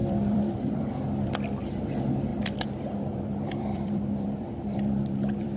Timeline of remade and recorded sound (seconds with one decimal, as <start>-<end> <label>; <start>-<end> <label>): 0.0-1.3 remade; 1.3-2.3 recorded; 2.3-5.6 remade